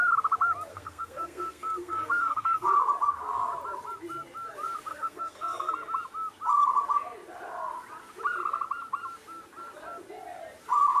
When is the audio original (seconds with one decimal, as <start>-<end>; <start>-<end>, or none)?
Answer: 0.0-0.7; 2.8-4.9; 5.7-11.0